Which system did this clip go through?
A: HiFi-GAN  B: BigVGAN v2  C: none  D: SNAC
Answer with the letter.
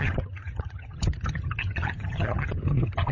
A